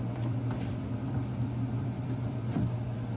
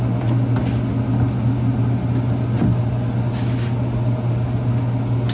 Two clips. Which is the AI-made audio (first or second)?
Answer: first